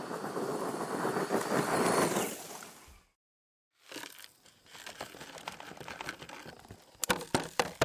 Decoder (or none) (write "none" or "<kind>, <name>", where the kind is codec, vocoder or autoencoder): none